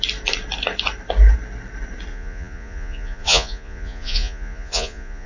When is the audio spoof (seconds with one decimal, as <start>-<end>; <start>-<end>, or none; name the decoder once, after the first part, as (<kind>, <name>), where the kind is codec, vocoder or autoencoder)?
2.1-5.3 (vocoder, Vocos)